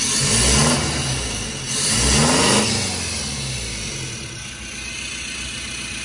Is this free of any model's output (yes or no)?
yes